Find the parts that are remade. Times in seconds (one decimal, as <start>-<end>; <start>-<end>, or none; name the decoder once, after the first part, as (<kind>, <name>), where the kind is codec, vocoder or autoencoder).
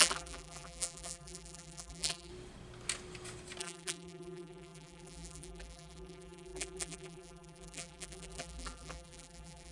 0.0-2.3 (vocoder, BigVGAN v2); 3.6-9.7